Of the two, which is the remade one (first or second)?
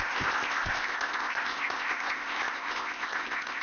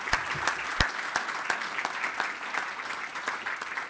first